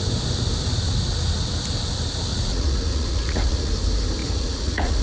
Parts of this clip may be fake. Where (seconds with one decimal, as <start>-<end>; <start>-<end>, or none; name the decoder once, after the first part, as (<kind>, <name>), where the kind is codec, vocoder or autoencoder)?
2.3-3.7 (vocoder, Vocos); 4.2-5.0